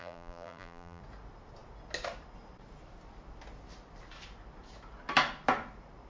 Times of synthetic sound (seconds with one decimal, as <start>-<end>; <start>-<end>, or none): 0.0-1.0